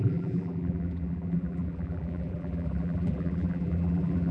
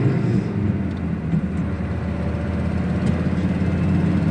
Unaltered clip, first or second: second